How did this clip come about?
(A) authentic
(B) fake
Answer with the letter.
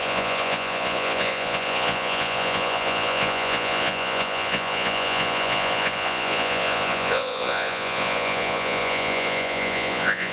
B